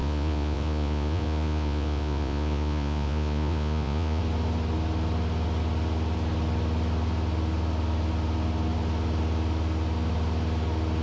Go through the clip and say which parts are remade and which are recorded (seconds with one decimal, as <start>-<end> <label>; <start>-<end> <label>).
0.0-4.2 remade; 4.2-11.0 recorded